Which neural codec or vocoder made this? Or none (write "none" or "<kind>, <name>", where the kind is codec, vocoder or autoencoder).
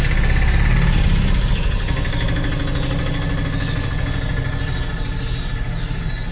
none